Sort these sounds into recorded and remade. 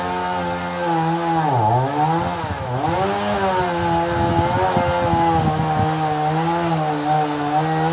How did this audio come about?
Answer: recorded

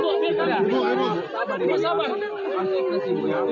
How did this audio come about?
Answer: recorded